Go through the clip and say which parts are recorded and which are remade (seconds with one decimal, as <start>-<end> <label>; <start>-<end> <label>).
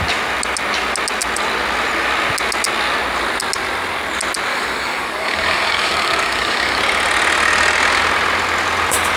0.0-4.5 recorded; 4.5-6.8 remade; 6.8-9.2 recorded